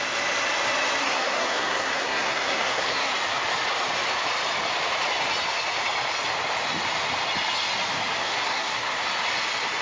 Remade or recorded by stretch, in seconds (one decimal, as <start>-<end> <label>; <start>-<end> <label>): 0.0-1.0 recorded; 1.0-3.1 remade; 3.1-8.2 recorded; 8.2-8.9 remade; 8.9-9.8 recorded